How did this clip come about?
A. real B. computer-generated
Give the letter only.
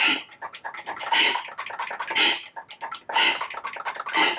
A